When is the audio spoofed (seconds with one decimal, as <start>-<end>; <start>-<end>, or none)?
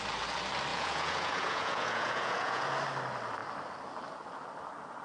0.7-2.7